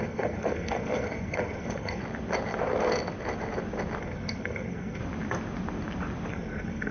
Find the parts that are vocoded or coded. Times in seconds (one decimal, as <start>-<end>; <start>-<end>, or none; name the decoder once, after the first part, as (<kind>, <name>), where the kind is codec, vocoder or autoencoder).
0.0-2.0 (codec, SNAC); 4.0-5.0; 6.3-6.9